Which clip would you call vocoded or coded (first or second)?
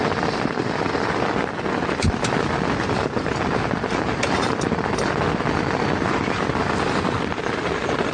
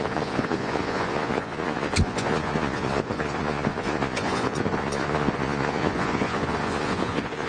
second